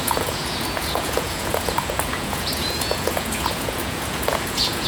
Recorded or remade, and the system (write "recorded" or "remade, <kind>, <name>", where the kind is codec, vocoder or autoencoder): remade, vocoder, Vocos